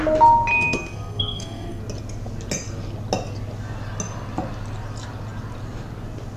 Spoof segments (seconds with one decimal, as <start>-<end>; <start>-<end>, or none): 0.5-1.8